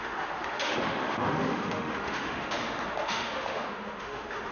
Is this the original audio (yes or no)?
no